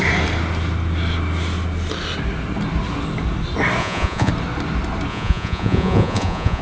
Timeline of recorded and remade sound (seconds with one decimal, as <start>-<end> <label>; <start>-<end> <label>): 0.0-3.8 recorded; 3.8-4.3 remade; 4.3-5.1 recorded; 5.1-6.6 remade